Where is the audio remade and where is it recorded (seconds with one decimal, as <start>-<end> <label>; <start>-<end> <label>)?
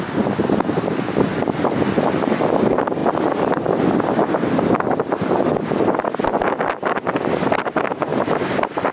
0.0-8.1 recorded; 8.1-8.9 remade